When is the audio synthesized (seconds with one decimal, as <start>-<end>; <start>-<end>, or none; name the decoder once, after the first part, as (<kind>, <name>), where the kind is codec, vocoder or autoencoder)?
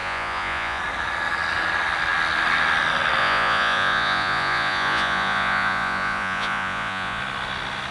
0.0-0.8 (vocoder, Vocos); 3.2-7.2